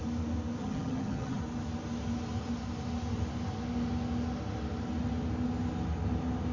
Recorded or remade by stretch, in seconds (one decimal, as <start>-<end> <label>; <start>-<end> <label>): 0.0-0.6 recorded; 0.6-1.4 remade; 1.4-6.5 recorded

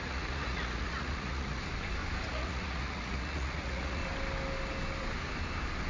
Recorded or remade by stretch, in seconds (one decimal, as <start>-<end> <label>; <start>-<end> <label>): 0.0-1.6 remade; 1.6-2.3 recorded; 2.3-4.0 remade; 4.0-5.9 recorded

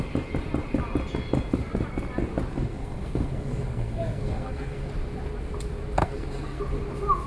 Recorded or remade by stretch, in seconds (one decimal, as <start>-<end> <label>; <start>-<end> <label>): 0.0-2.5 recorded; 2.5-4.9 remade; 4.9-6.0 recorded; 6.0-6.6 remade; 6.6-7.3 recorded